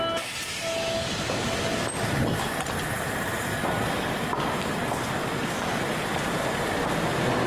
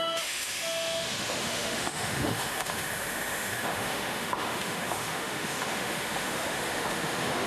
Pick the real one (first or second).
first